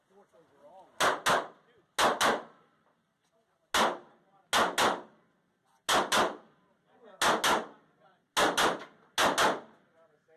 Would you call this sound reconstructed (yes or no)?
no